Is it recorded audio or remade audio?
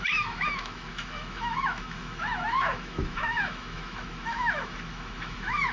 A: remade